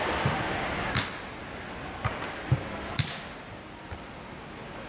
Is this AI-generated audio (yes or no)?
no